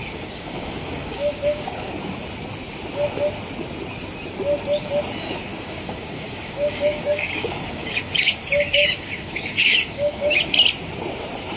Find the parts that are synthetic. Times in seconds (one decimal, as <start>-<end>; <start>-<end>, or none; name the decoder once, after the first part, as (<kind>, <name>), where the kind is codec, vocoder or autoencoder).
0.0-1.9 (codec, DAC); 5.5-10.4